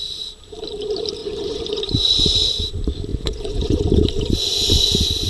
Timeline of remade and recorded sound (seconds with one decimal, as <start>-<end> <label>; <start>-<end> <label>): 0.0-1.2 recorded; 1.2-1.8 remade; 1.8-3.1 recorded; 3.1-3.8 remade; 3.8-5.3 recorded